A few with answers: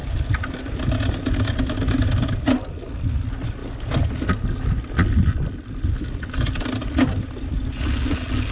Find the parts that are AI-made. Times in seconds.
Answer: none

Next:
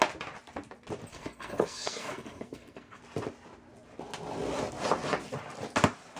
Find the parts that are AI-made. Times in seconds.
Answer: 1.1-3.0 (codec, SNAC)

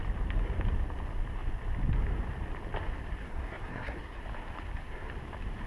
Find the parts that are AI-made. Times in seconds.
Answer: 3.2-4.2 (codec, SNAC)

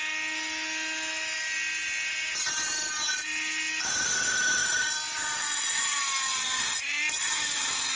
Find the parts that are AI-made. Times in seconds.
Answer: none

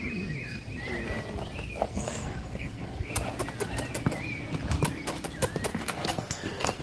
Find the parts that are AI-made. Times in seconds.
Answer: 1.9-3.1 (codec, SNAC); 5.7-6.8

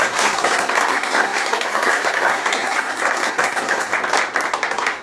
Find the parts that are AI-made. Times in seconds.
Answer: 0.0-3.9 (codec, SNAC); 4.6-5.0